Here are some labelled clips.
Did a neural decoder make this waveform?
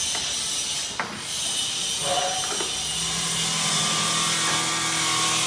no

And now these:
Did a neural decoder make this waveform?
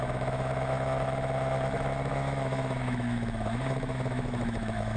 yes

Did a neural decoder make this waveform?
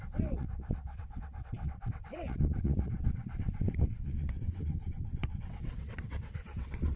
yes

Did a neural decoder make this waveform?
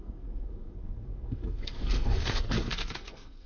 yes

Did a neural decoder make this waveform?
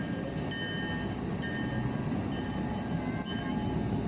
no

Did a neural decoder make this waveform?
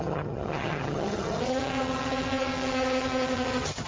yes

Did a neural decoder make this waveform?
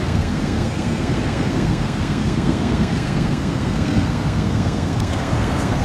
yes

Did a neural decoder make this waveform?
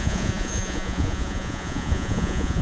yes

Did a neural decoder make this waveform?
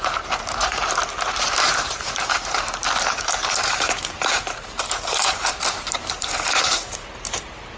yes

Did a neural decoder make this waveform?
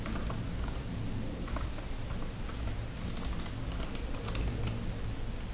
no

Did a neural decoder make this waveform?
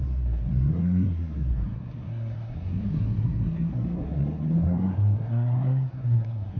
yes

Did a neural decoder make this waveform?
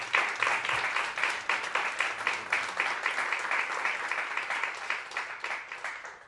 no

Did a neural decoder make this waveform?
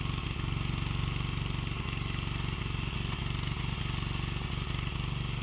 no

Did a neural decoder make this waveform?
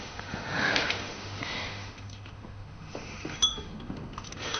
yes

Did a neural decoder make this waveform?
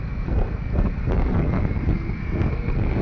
yes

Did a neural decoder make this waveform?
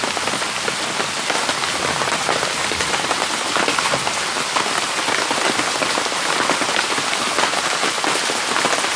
no